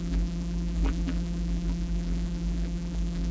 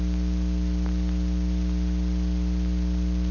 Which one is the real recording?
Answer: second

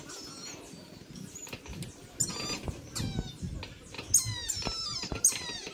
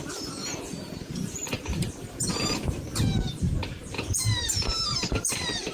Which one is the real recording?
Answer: first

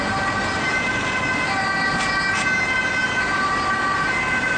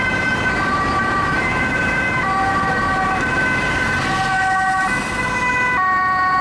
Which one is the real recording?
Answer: first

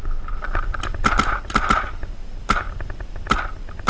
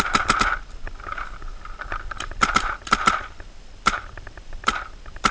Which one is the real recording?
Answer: first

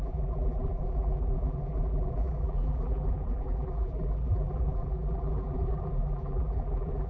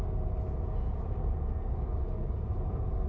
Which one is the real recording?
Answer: second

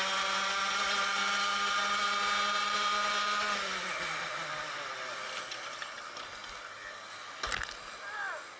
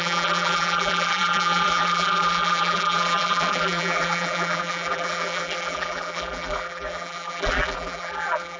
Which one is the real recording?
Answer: first